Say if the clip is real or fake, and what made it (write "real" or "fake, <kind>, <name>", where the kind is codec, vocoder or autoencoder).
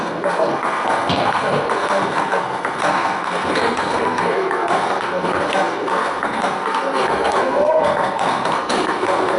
fake, codec, SNAC